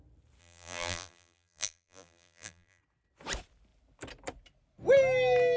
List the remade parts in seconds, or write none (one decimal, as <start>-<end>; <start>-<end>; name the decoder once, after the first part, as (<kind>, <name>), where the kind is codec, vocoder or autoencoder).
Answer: 0.4-2.8 (vocoder, BigVGAN v2)